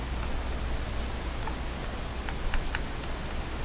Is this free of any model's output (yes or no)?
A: yes